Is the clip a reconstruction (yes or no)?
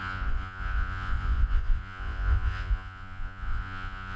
yes